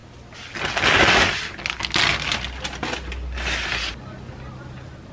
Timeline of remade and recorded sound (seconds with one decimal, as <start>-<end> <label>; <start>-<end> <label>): 0.0-5.1 recorded

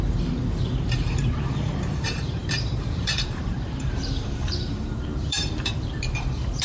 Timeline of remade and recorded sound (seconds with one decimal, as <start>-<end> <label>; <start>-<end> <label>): 0.0-6.6 remade

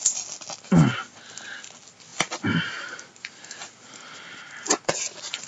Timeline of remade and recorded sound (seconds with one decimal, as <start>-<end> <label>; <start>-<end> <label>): 0.0-5.5 recorded

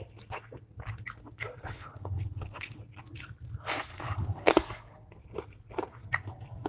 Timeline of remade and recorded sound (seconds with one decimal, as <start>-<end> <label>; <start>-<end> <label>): 0.0-1.6 recorded; 1.6-2.8 remade; 2.8-3.9 recorded; 3.9-4.5 remade; 4.5-6.7 recorded

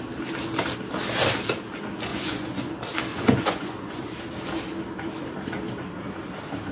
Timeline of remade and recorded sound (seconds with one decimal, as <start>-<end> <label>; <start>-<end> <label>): 0.0-2.1 recorded; 2.1-2.7 remade; 2.7-3.1 recorded; 3.1-4.1 remade; 4.1-6.7 recorded

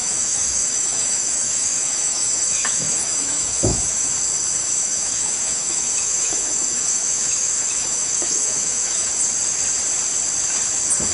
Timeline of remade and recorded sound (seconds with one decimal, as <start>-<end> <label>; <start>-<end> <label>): 0.0-4.1 remade; 4.1-4.6 recorded; 4.6-9.1 remade; 9.1-11.1 recorded